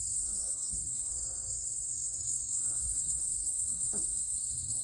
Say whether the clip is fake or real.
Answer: fake